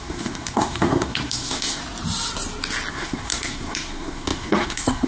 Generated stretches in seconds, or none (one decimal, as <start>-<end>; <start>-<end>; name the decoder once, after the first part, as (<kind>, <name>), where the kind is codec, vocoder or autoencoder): 0.0-1.8 (codec, SNAC); 2.9-5.1